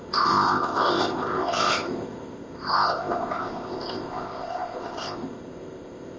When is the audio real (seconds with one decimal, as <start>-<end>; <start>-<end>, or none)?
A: none